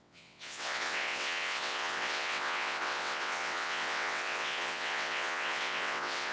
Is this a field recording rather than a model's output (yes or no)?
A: no